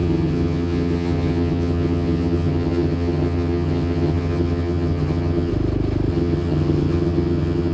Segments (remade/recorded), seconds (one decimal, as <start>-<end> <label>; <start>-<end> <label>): 0.0-5.5 remade; 5.5-6.1 recorded; 6.1-7.7 remade